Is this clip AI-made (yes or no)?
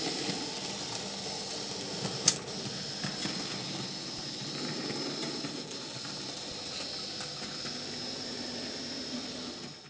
no